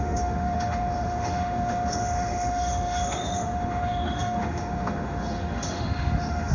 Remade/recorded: remade